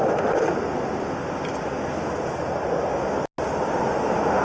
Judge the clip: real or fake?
real